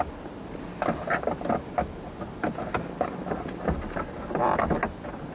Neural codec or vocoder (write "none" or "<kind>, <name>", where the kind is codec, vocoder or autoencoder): none